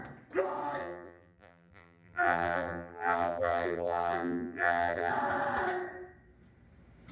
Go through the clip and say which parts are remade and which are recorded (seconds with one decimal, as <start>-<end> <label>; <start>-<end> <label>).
0.0-0.8 recorded; 0.8-5.1 remade; 5.1-7.1 recorded